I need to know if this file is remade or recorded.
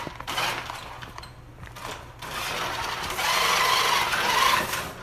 recorded